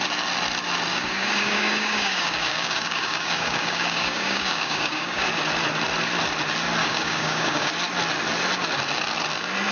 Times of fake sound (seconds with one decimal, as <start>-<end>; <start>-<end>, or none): 0.9-5.3; 6.8-7.7